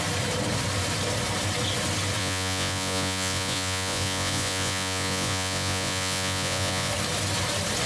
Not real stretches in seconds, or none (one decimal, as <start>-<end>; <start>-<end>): 2.2-6.9